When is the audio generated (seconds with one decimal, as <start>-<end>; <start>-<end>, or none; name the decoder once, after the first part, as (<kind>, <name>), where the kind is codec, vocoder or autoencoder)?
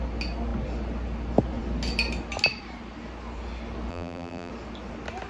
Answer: 3.9-4.5 (vocoder, BigVGAN v2)